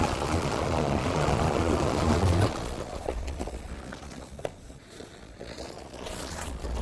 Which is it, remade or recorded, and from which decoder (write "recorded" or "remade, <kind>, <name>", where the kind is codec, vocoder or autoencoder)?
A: remade, vocoder, Vocos